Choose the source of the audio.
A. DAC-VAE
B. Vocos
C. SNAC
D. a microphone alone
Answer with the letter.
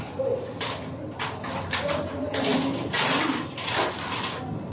D